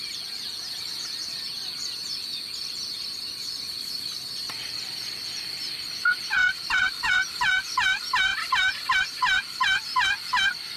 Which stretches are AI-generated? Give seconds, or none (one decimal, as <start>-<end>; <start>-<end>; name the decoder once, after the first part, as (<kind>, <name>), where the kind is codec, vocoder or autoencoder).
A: 3.4-5.2 (vocoder, BigVGAN v2); 6.4-7.0